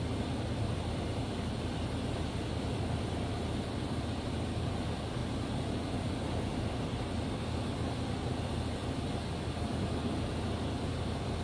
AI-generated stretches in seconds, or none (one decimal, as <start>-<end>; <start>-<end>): 0.0-5.2; 5.7-8.8; 9.5-10.0; 10.9-11.4